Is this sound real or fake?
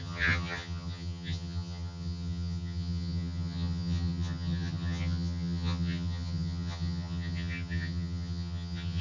fake